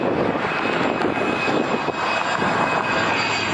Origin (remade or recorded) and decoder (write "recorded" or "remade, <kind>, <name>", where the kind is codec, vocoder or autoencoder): recorded